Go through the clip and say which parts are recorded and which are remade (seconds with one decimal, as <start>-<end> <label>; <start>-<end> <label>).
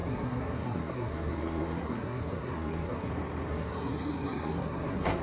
0.0-3.1 remade; 3.1-3.5 recorded; 3.5-5.2 remade